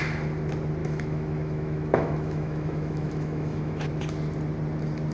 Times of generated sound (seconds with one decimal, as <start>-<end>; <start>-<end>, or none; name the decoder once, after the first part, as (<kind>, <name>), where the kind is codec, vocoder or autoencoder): 0.8-3.9 (autoencoder, DAC-VAE)